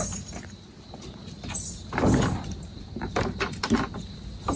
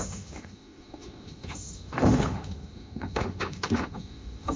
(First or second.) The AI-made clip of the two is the second